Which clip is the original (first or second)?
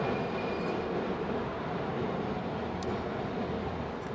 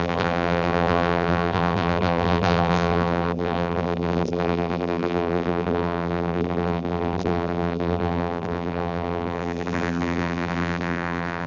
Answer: first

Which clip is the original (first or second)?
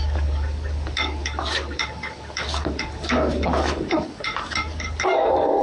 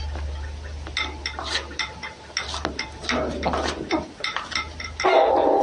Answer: second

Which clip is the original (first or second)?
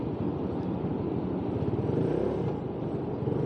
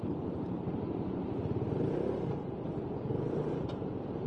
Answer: first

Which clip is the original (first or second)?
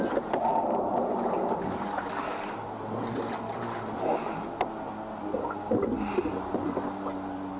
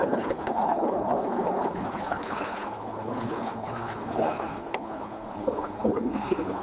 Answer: first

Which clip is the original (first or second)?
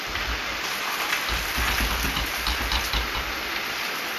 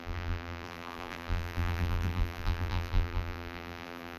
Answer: first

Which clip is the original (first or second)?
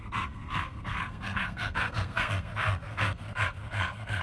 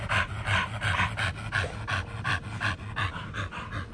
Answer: second